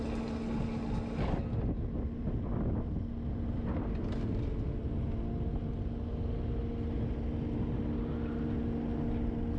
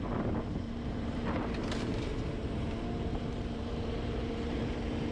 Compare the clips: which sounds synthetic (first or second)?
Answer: second